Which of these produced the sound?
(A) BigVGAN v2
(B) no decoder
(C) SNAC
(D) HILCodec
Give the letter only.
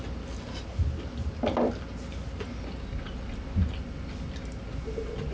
B